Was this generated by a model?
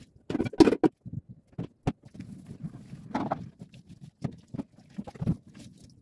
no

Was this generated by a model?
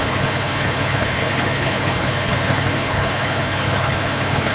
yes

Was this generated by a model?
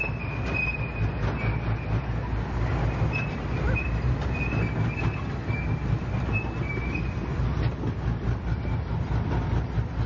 no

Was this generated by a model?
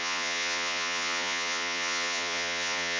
yes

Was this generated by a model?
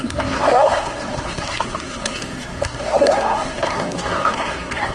yes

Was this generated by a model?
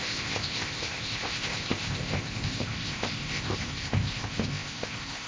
yes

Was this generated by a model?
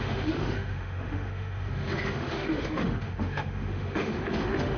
yes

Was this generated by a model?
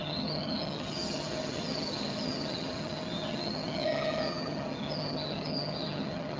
yes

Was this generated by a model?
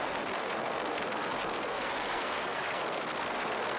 yes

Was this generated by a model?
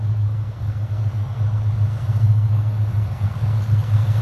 yes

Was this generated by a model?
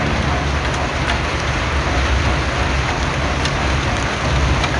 no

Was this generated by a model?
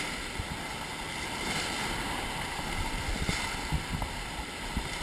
no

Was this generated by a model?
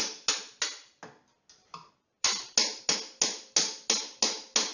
no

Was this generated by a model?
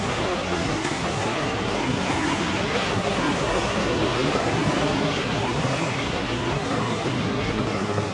yes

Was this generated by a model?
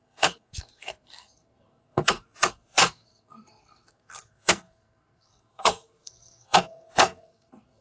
yes